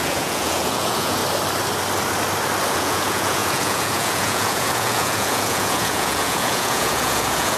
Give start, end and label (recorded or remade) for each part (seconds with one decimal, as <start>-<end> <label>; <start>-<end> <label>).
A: 0.0-1.2 remade; 1.2-2.7 recorded; 2.7-7.6 remade